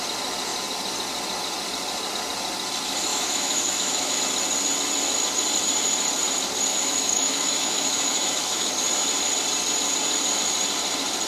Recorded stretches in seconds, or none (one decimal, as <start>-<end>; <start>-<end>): 0.0-3.1; 4.2-6.7; 8.7-11.3

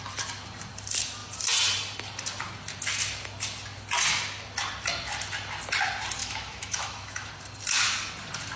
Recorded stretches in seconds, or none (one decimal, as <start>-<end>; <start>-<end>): 0.0-6.2; 7.3-8.6

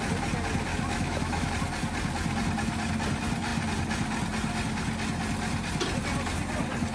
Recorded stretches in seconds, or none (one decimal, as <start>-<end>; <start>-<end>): 0.0-0.7; 1.5-6.9

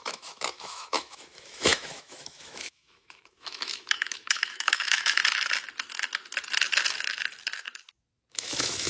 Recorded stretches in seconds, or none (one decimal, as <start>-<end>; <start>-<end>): 5.2-8.3

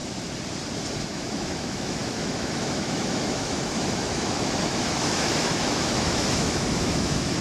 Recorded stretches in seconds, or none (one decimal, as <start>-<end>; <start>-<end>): 0.0-1.0